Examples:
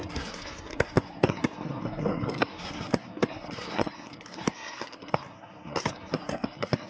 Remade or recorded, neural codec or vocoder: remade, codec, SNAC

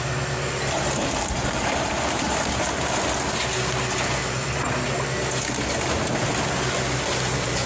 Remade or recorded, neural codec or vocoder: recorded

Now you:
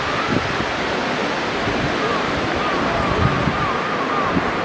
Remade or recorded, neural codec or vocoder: recorded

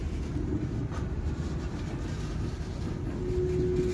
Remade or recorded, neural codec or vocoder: recorded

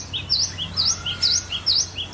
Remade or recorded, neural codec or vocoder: recorded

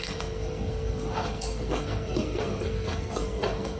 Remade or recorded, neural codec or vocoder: remade, codec, SNAC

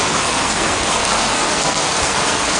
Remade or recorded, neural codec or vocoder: remade, codec, SNAC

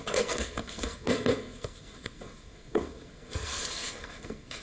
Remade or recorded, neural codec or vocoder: remade, codec, SNAC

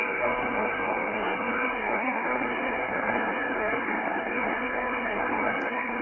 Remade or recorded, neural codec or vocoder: remade, codec, SNAC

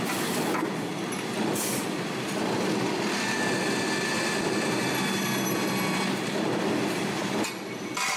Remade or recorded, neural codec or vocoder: recorded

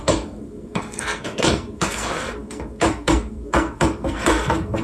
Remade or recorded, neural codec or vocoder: remade, codec, SNAC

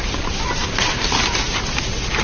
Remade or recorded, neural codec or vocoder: recorded